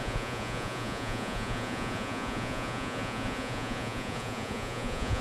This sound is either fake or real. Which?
fake